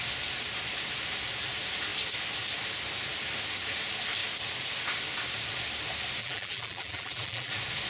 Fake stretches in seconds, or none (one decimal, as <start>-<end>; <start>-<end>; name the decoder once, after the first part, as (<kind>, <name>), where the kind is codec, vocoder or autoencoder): 6.2-7.5 (vocoder, BigVGAN v2)